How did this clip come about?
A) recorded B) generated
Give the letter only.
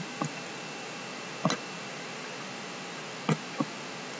A